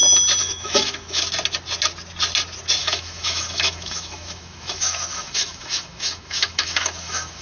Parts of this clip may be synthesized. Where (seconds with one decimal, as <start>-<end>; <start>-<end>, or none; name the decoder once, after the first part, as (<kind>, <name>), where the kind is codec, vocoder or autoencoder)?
0.4-1.2 (autoencoder, DAC-VAE); 2.8-7.4